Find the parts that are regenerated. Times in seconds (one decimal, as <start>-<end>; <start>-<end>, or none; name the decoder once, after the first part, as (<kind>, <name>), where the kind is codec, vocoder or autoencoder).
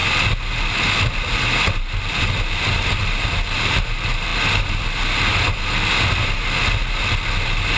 none